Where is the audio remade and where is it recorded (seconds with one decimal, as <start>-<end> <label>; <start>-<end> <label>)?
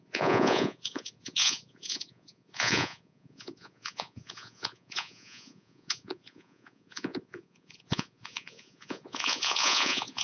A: 0.0-10.2 remade